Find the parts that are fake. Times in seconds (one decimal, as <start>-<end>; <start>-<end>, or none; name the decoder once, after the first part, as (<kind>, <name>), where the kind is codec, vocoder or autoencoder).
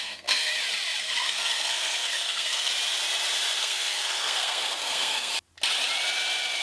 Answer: 0.0-0.5 (codec, SNAC); 1.0-2.7; 3.6-5.3